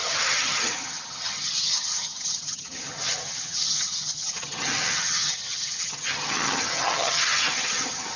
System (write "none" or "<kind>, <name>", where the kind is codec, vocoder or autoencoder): vocoder, HiFi-GAN